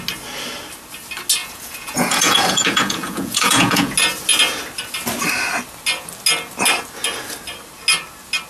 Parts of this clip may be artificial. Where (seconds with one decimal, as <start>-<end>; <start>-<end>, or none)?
1.4-3.9